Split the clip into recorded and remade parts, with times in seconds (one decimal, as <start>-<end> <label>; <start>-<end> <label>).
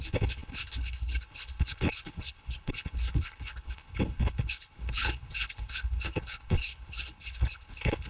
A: 0.0-8.1 remade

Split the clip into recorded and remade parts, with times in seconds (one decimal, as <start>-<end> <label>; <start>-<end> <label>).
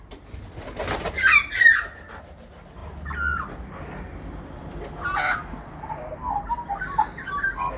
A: 0.0-7.8 recorded